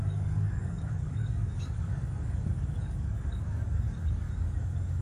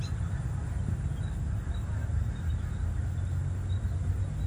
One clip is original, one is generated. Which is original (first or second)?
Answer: second